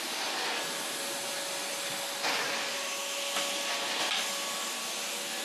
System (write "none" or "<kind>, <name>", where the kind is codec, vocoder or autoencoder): none